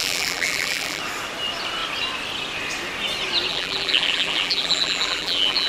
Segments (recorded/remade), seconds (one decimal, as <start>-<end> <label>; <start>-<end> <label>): 0.0-1.0 remade; 1.0-3.5 recorded; 3.5-5.7 remade